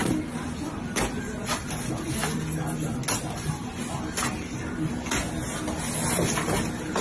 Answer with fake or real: real